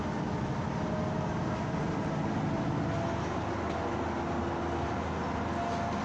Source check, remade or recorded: recorded